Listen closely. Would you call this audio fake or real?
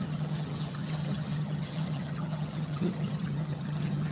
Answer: fake